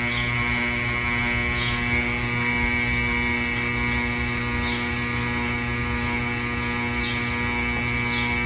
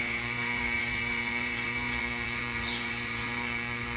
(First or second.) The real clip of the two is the first